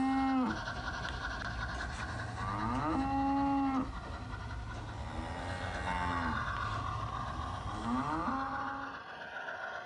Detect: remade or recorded recorded